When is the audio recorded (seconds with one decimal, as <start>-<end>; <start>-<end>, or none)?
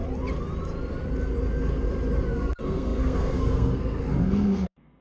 0.0-2.3